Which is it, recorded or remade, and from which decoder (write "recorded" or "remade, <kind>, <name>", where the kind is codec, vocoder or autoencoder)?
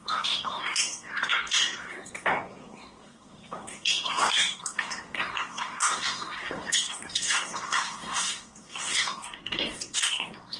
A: remade, codec, SNAC